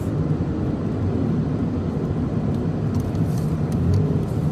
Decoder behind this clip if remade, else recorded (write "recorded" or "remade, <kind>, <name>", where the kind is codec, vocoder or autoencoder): recorded